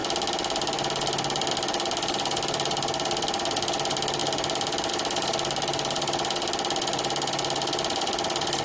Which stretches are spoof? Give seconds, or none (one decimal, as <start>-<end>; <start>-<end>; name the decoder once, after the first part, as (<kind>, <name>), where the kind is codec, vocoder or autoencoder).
none